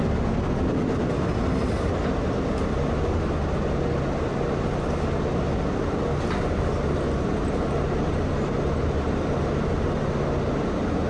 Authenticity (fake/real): real